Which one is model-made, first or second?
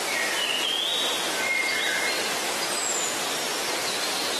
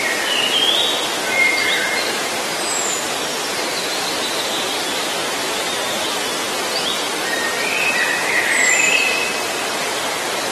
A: second